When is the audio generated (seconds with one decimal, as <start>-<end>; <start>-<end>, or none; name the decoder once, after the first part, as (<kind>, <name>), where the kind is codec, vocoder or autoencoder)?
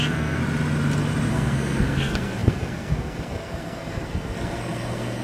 0.0-0.4 (codec, SNAC); 1.3-5.2